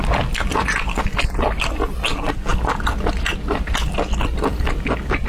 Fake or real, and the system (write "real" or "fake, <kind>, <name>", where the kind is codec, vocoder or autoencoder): real